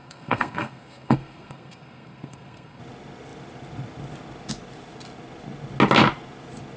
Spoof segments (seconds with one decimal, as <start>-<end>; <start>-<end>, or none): 0.0-2.8